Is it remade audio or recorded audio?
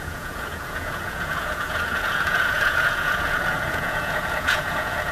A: remade